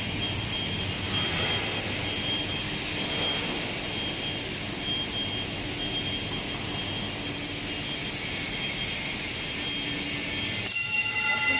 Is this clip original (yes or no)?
yes